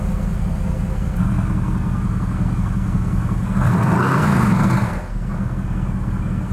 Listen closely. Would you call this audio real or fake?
fake